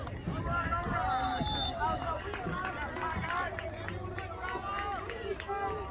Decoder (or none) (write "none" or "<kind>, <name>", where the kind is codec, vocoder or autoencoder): none